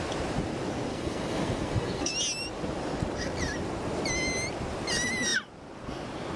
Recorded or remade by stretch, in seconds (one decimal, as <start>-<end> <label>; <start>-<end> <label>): 0.0-0.9 recorded; 0.9-2.1 remade; 2.1-6.4 recorded